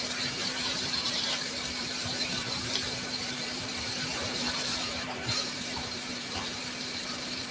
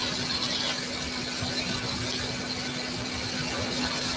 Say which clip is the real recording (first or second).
second